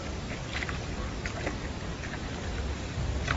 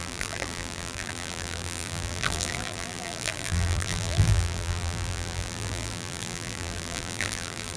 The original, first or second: first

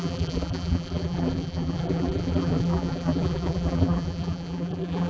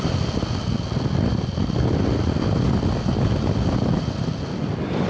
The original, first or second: second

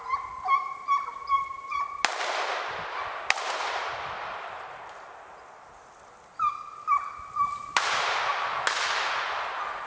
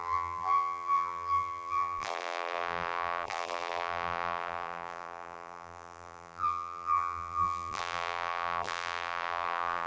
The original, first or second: first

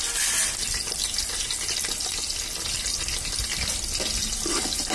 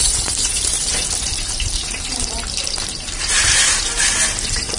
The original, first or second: first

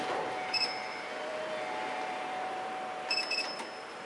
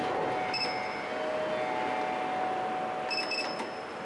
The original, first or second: second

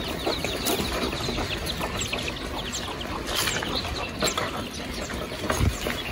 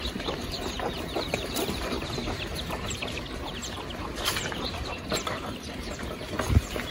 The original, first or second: first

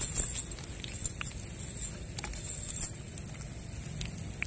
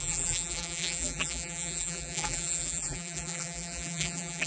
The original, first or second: first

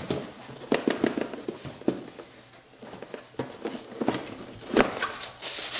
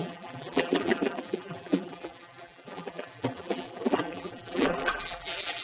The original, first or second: first